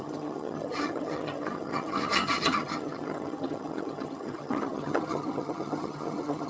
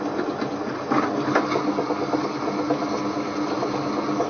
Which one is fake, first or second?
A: first